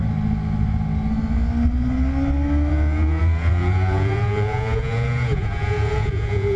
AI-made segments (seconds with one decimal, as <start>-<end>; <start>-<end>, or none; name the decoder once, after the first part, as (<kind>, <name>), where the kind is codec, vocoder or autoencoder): 2.7-6.6 (vocoder, Vocos)